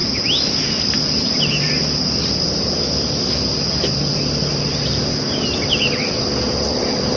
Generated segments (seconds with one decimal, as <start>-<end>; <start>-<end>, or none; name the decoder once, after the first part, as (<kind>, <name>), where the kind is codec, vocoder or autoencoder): none